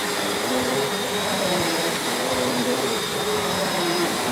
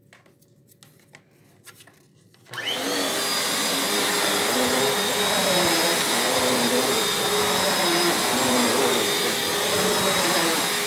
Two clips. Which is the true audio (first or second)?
second